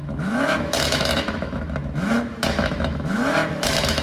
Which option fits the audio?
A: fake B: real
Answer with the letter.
A